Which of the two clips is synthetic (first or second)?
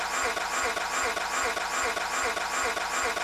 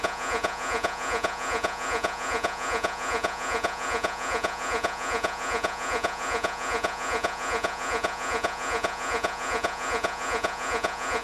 second